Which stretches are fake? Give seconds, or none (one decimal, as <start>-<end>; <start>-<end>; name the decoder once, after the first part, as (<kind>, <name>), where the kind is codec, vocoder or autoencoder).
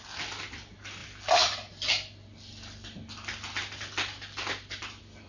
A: none